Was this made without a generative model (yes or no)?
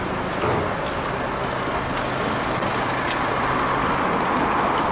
yes